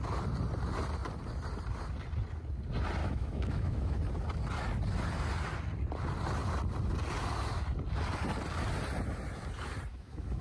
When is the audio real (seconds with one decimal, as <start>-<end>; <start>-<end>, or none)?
0.0-3.0; 4.0-9.9